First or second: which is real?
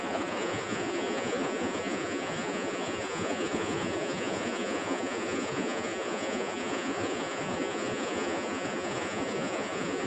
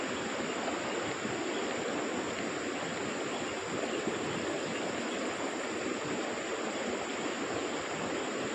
second